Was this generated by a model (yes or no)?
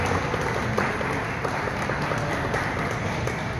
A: yes